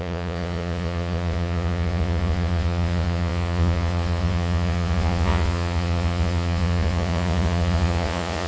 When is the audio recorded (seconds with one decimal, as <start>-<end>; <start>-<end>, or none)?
none